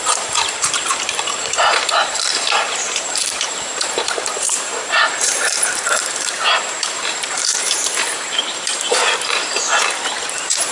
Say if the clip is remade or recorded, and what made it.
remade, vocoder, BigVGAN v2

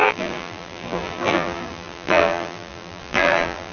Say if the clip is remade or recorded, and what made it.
remade, vocoder, BigVGAN v2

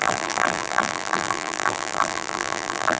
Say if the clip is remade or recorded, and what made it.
remade, vocoder, BigVGAN v2